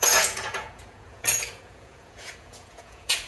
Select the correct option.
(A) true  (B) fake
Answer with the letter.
B